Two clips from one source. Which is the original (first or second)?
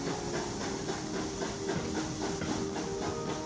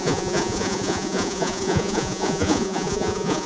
first